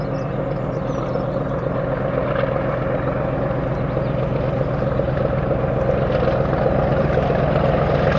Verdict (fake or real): real